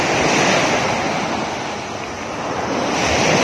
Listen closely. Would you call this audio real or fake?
real